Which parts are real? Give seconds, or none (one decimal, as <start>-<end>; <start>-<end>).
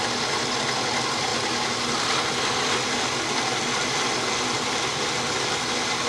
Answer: 0.0-6.1